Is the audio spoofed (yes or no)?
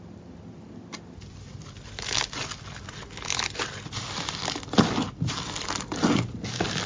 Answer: yes